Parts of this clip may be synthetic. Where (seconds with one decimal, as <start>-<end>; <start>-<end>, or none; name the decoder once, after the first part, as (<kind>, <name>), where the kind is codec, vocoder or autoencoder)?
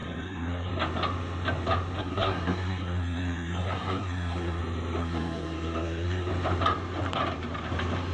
0.0-0.7 (codec, SNAC); 2.0-4.6; 5.0-6.3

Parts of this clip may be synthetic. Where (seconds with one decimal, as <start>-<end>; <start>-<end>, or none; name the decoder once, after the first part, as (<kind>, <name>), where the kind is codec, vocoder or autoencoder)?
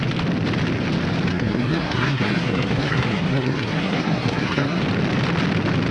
1.3-4.8 (codec, SNAC)